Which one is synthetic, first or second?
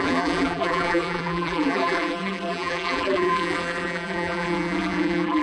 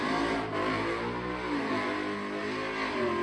first